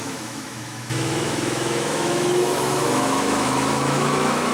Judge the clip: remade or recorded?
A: remade